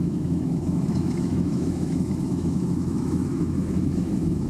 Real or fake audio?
fake